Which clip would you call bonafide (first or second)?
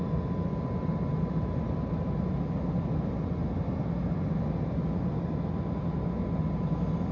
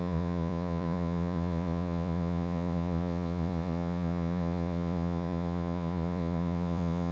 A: first